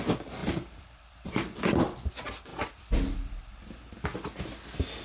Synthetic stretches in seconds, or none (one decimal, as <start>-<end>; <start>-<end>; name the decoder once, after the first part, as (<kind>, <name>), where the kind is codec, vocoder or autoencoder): 0.4-2.1 (vocoder, BigVGAN v2); 2.5-3.5